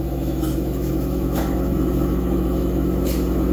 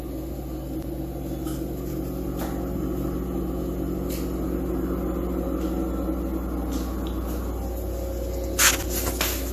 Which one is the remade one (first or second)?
first